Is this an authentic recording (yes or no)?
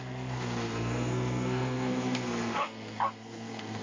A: no